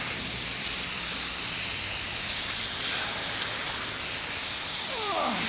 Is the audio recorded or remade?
remade